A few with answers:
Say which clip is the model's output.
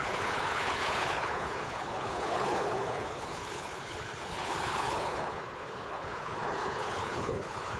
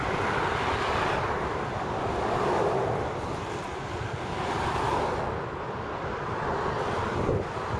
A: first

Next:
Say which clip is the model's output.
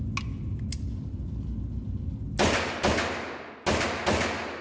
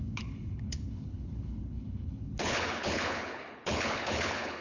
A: second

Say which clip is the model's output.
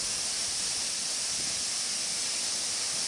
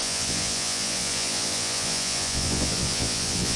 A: second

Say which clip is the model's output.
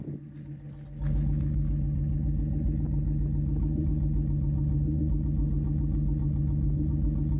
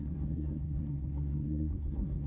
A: second